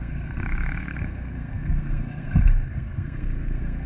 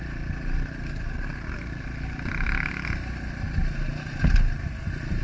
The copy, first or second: first